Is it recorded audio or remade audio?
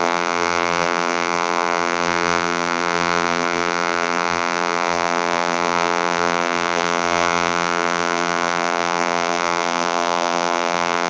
remade